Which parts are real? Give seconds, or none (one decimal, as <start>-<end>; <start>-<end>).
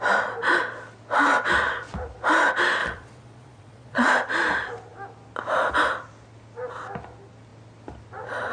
0.0-2.8; 4.1-8.5